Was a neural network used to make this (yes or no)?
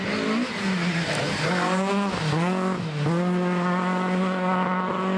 no